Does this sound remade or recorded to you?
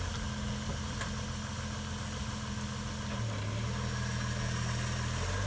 recorded